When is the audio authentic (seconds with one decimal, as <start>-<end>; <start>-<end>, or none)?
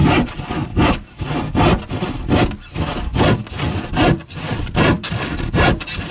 0.0-6.1